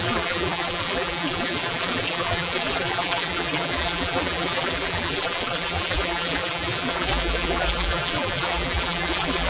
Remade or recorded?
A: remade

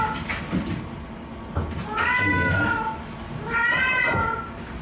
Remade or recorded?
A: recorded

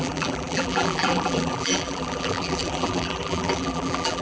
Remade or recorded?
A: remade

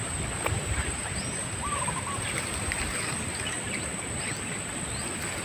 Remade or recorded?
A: remade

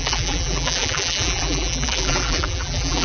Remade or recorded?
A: remade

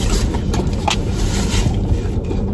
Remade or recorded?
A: recorded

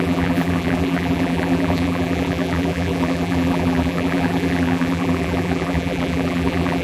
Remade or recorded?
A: remade